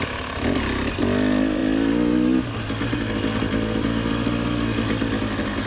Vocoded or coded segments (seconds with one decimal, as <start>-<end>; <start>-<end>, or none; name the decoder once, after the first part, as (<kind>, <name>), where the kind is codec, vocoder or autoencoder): none